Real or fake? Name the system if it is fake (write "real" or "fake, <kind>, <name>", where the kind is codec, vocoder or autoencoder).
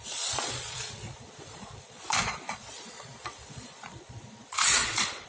fake, vocoder, Vocos